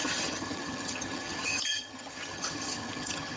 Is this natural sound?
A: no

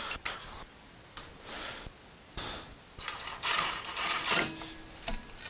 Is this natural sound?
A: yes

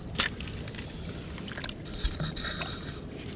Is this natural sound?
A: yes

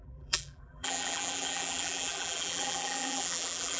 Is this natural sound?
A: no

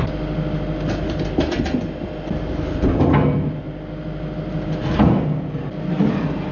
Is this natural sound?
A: yes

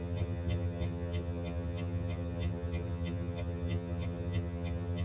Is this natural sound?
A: no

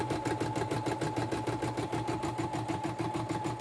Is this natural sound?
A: yes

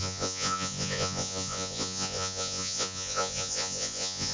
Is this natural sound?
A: no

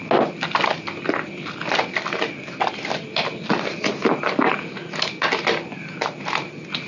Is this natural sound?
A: yes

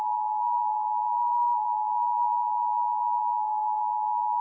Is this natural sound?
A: no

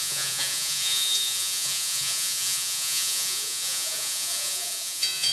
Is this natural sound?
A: no